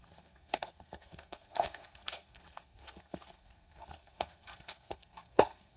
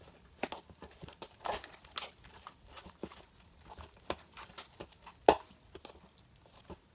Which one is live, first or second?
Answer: second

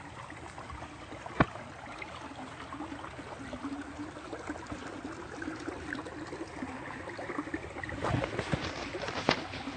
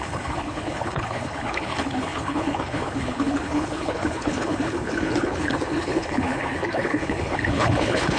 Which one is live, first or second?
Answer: first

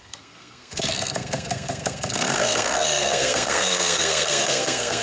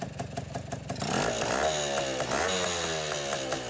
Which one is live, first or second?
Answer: second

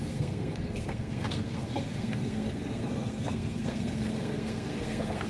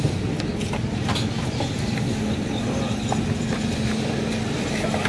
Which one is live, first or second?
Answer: second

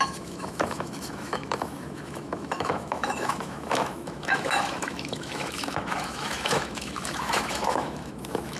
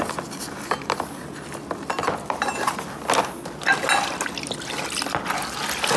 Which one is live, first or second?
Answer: second